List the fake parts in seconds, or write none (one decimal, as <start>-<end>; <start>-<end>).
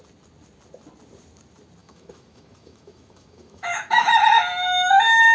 1.8-4.2